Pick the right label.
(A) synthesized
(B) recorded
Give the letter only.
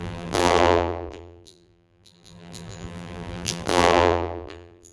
A